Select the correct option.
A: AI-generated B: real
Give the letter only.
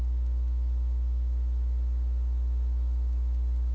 B